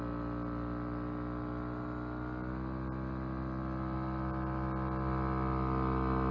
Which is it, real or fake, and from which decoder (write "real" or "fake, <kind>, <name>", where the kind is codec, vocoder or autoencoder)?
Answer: real